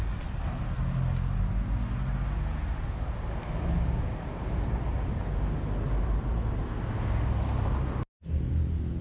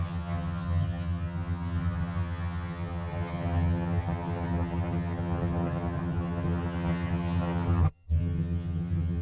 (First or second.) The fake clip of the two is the second